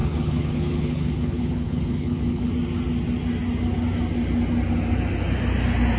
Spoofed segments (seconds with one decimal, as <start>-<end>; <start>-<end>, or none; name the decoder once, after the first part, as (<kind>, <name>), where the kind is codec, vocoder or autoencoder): 0.0-2.5 (codec, HILCodec)